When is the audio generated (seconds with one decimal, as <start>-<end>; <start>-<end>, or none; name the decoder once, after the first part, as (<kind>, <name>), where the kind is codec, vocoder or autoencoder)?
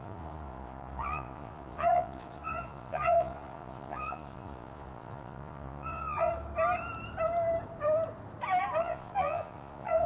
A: 0.0-6.3 (vocoder, Vocos); 8.8-10.1